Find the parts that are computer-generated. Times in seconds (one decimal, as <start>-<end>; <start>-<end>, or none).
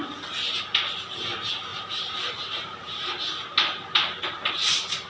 1.7-3.1